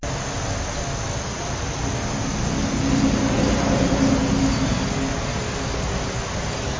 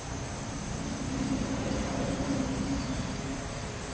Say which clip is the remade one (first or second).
second